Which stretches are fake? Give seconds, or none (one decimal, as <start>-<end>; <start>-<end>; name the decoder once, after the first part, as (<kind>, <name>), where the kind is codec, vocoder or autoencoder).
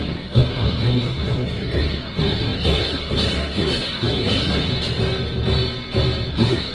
0.0-4.7 (codec, SNAC); 6.3-6.7